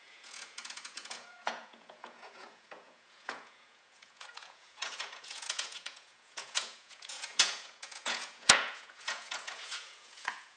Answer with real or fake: fake